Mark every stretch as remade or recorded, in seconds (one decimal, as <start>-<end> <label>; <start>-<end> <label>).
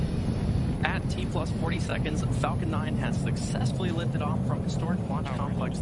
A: 0.0-5.8 remade